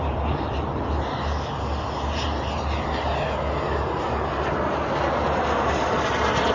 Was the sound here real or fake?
real